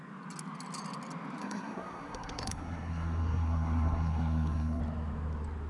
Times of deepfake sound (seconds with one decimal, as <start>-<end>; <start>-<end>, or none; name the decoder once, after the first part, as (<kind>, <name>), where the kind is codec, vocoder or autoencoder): 1.4-4.8 (codec, SNAC)